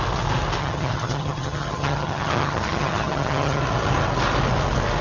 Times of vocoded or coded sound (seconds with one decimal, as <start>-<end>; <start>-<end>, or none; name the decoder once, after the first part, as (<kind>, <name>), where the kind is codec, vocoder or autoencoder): 0.6-3.6 (vocoder, HiFi-GAN)